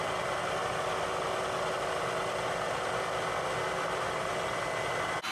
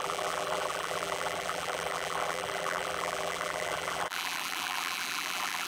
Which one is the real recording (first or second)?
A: first